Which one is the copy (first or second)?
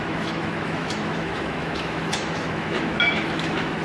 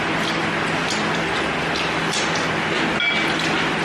first